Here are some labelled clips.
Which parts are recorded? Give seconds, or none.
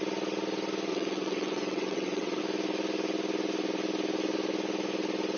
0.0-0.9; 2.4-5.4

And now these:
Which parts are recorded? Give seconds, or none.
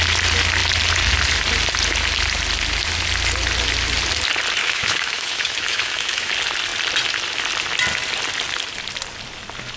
0.0-4.6; 6.3-9.8